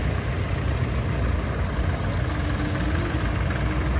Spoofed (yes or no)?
no